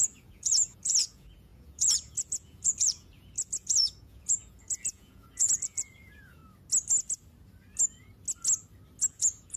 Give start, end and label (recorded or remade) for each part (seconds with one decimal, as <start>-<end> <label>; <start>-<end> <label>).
0.0-6.4 remade; 6.4-9.1 recorded; 9.1-9.6 remade